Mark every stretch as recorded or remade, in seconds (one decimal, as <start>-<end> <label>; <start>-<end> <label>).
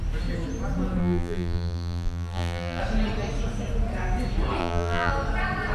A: 0.0-1.0 recorded; 1.0-2.8 remade; 2.8-4.6 recorded; 4.6-5.1 remade; 5.1-5.7 recorded